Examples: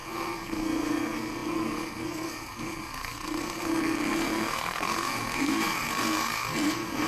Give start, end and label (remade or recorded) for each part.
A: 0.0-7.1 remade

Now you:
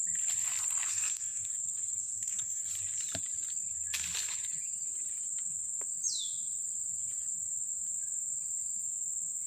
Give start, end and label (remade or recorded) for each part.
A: 0.0-0.9 recorded; 0.9-1.5 remade; 1.5-2.0 recorded; 2.0-2.6 remade; 2.6-9.5 recorded

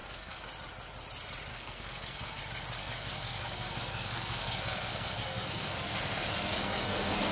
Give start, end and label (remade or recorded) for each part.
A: 0.0-0.5 remade; 0.5-1.5 recorded; 1.5-2.4 remade; 2.4-2.8 recorded; 2.8-7.3 remade

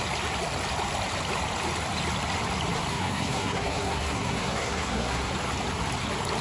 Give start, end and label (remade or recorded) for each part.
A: 0.0-2.9 recorded; 2.9-5.3 remade; 5.3-6.4 recorded

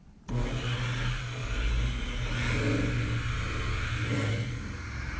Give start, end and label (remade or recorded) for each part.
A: 0.0-3.7 recorded; 3.7-4.3 remade; 4.3-5.2 recorded

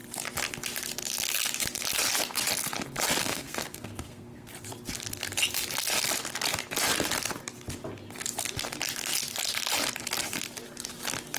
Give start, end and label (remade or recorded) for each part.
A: 0.0-3.2 recorded; 3.2-4.5 remade; 4.5-11.4 recorded